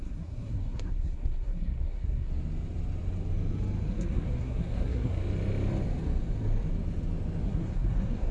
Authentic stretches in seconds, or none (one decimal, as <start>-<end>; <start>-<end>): 2.3-3.9; 5.2-7.4

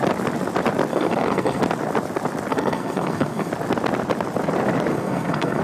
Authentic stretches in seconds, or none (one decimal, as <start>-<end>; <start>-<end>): 0.0-0.9; 1.6-2.5; 3.5-4.9

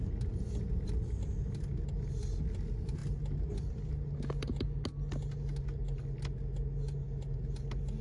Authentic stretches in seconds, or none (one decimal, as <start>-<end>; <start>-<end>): 0.0-8.0

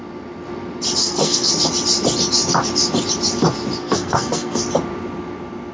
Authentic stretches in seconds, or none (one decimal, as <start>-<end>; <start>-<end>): 0.0-1.0; 1.5-3.8; 4.6-5.7